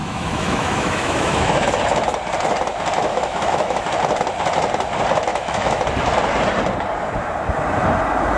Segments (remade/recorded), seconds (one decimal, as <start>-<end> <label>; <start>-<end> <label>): 0.0-1.8 remade; 1.8-3.1 recorded; 3.1-3.8 remade; 3.8-5.3 recorded; 5.3-5.8 remade; 5.8-8.4 recorded